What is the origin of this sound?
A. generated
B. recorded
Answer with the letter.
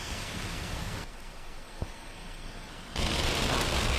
A